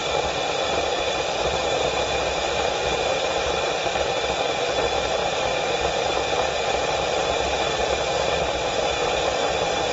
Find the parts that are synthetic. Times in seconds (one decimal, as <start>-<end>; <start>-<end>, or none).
none